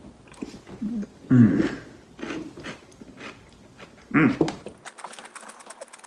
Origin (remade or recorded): recorded